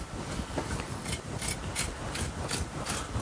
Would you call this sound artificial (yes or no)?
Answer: no